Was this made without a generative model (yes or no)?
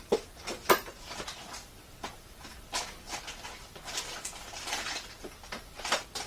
yes